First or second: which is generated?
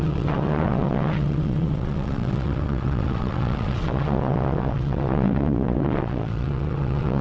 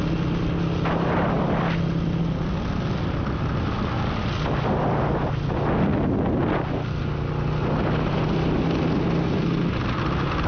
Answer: first